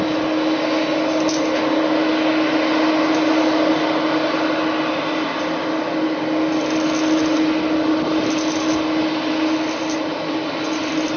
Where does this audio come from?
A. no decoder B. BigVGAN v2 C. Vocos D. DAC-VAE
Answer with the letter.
A